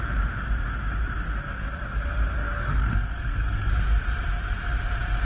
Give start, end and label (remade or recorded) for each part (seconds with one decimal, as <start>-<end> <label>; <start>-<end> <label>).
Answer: 0.0-2.6 recorded; 2.6-3.7 remade; 3.7-5.2 recorded